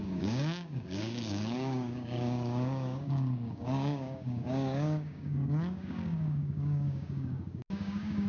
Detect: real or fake fake